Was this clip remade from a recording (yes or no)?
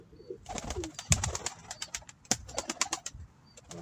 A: no